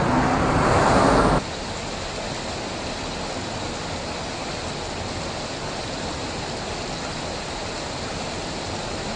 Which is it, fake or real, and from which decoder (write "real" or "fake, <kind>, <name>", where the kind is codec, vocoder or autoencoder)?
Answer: real